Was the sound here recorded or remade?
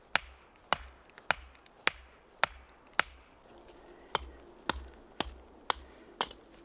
recorded